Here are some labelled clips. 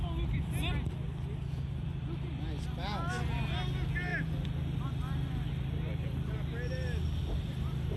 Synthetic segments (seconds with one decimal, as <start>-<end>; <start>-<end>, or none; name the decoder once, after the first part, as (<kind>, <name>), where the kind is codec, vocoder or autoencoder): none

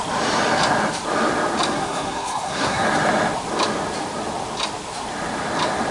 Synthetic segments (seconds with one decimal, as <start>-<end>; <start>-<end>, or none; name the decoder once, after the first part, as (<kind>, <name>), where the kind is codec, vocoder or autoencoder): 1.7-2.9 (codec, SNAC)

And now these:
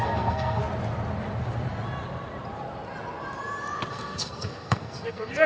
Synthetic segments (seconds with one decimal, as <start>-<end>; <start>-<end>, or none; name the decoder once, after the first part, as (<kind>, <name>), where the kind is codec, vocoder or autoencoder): 0.0-0.6 (codec, SNAC); 3.9-5.5

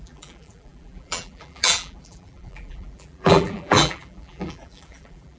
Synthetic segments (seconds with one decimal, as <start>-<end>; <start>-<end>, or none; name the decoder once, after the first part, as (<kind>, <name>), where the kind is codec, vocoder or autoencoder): 0.0-5.4 (vocoder, BigVGAN v2)

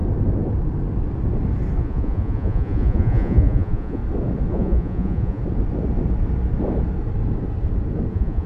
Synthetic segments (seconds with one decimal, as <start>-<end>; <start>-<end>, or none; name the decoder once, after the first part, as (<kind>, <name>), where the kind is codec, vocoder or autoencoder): 1.8-4.0 (vocoder, Vocos); 4.5-5.4; 8.1-8.5

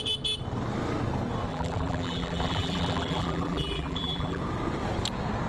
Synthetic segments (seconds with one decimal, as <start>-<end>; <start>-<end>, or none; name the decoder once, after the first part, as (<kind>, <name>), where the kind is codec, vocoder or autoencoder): 1.5-4.4 (vocoder, BigVGAN v2)

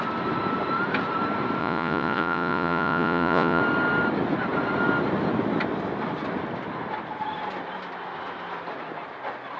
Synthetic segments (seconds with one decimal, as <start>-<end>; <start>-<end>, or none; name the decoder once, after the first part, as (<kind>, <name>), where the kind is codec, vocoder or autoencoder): 1.6-3.6 (vocoder, Vocos)